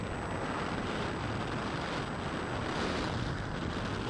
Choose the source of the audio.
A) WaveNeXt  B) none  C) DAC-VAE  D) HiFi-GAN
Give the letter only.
B